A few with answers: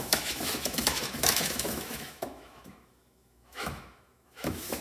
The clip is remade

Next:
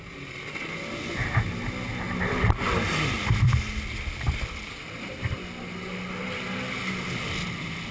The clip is recorded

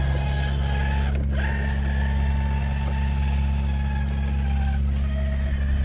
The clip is recorded